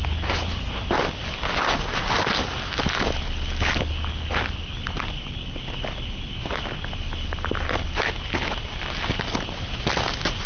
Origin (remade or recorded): recorded